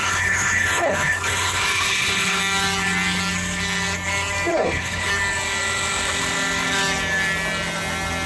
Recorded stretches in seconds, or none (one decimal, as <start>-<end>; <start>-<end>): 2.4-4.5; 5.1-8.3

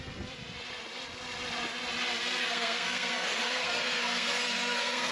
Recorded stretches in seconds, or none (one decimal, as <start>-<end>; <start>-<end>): 0.0-2.4

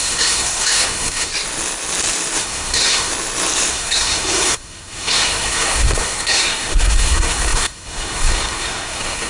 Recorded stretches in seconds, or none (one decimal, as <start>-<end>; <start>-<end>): 1.3-2.4; 3.1-3.7

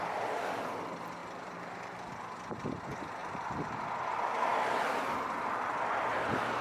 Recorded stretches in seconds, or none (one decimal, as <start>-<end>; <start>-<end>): 0.0-1.2; 2.1-3.2; 3.9-6.6

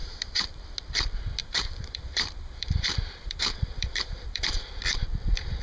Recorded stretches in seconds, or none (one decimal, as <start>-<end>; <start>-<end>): 0.6-1.4; 4.8-5.6